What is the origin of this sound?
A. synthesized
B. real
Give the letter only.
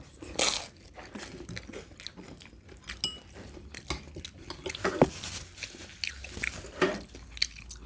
B